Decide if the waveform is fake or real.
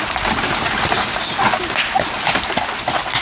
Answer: real